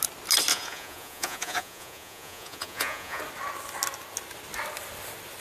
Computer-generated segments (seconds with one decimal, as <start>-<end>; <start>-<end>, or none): 0.5-3.2